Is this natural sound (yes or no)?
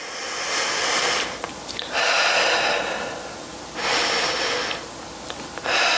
yes